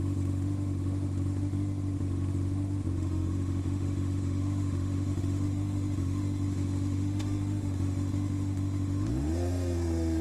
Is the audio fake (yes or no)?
yes